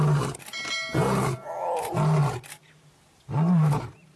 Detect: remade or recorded recorded